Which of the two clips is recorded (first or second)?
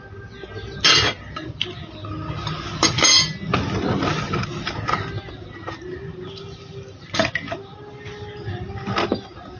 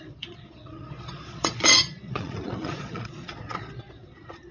first